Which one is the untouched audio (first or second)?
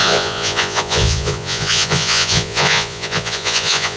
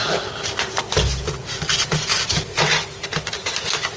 second